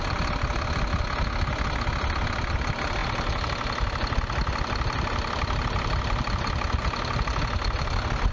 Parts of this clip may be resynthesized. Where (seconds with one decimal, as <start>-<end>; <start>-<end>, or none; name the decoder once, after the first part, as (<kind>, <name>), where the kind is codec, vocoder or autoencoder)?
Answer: none